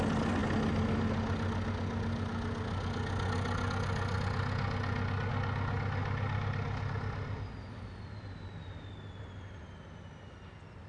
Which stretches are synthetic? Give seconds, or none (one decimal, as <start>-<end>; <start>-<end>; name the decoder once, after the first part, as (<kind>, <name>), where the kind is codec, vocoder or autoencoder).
none

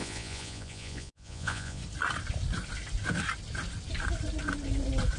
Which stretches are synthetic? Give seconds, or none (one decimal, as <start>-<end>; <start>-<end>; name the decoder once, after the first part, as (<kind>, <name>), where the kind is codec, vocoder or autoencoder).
0.0-1.8 (vocoder, Vocos)